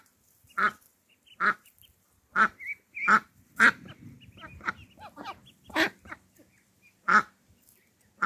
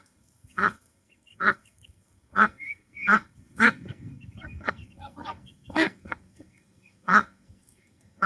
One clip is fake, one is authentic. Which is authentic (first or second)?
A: first